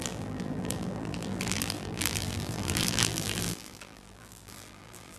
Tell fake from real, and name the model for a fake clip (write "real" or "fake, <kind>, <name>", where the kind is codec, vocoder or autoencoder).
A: fake, vocoder, BigVGAN v2